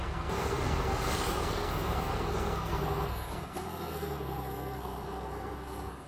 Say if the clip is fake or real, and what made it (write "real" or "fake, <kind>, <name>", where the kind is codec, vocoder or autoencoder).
fake, codec, SNAC